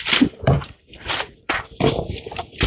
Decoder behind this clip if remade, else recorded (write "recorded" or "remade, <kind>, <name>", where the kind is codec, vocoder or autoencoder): remade, vocoder, BigVGAN v2